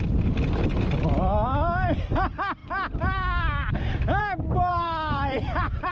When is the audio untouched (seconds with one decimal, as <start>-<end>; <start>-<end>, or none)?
0.0-4.7